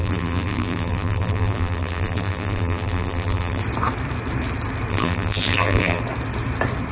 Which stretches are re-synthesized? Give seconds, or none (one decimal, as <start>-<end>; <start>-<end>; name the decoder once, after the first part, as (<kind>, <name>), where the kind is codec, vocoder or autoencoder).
0.0-3.6 (vocoder, BigVGAN v2); 4.9-6.0